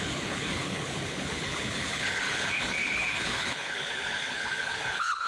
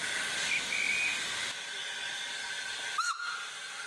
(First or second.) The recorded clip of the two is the second